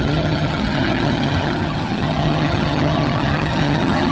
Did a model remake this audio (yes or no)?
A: yes